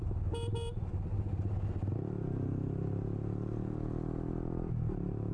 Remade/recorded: recorded